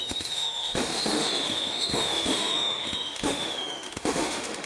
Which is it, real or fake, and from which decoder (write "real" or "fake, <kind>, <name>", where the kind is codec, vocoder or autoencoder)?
fake, autoencoder, DAC-VAE